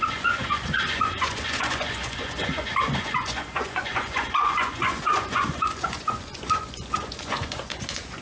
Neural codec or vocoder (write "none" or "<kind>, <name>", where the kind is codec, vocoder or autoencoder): vocoder, Vocos